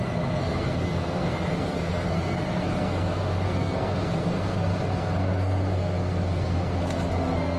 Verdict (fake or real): fake